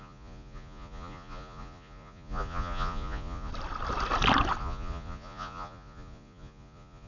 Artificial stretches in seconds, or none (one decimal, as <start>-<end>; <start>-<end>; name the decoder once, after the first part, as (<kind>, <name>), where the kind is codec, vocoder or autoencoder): 0.0-3.5 (vocoder, Vocos); 4.6-7.1